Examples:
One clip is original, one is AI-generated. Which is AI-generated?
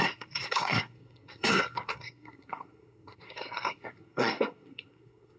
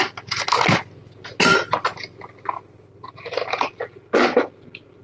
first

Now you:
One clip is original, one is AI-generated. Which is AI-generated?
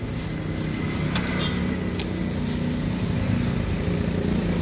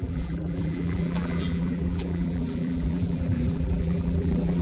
second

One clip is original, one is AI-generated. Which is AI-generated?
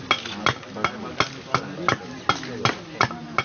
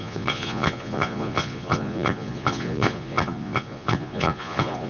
second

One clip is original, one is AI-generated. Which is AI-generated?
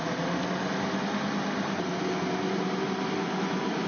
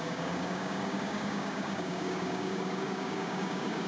second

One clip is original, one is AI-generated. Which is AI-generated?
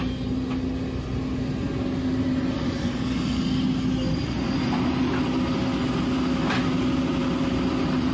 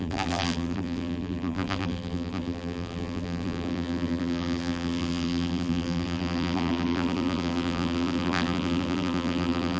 second